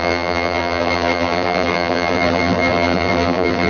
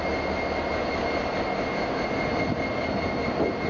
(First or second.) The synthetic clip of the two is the first